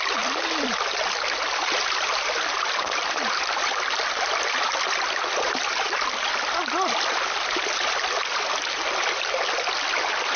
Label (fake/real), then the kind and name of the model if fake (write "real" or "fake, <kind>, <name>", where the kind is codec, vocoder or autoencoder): fake, vocoder, BigVGAN v2